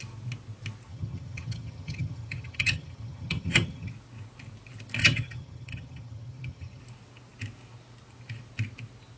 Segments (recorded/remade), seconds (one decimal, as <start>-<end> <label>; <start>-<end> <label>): 0.0-0.9 recorded; 0.9-3.9 remade; 3.9-5.0 recorded; 5.0-6.8 remade; 6.8-9.2 recorded